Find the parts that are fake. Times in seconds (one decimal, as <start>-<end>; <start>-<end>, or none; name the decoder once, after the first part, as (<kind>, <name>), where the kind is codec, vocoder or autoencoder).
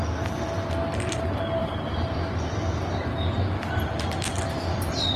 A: none